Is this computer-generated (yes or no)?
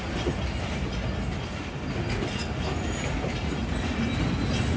no